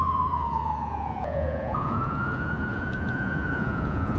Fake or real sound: fake